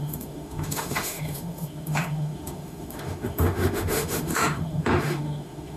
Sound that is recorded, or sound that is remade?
remade